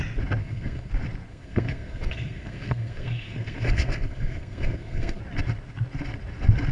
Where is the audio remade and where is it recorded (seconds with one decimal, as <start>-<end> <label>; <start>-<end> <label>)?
0.0-0.4 recorded; 0.4-0.9 remade; 0.9-1.3 recorded; 1.3-5.2 remade; 5.2-6.7 recorded